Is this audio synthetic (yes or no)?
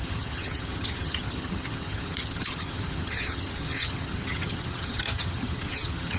yes